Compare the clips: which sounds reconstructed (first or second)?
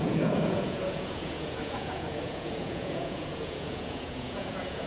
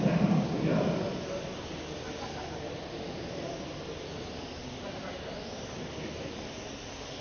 first